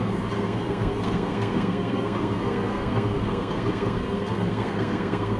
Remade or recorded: remade